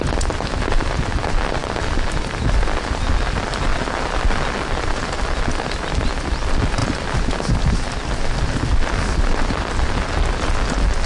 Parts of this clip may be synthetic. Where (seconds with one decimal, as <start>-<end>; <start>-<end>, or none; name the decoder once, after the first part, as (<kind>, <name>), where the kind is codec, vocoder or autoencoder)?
none